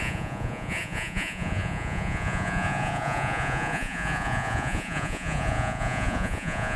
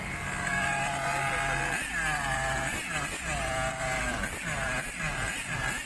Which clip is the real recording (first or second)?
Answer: second